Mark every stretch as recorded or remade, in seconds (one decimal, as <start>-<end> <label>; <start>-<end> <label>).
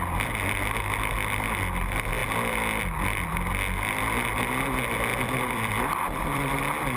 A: 0.0-5.1 recorded; 5.1-6.6 remade; 6.6-7.0 recorded